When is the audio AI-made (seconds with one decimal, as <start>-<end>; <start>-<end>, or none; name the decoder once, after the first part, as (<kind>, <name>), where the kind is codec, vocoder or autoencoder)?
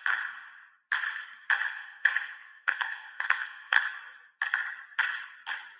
1.7-3.8 (codec, SNAC)